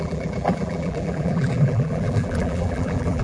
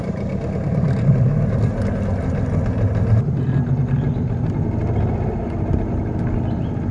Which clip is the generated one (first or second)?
first